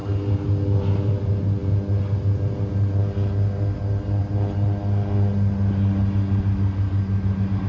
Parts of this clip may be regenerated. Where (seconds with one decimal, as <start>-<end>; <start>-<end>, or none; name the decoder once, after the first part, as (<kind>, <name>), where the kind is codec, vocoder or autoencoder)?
none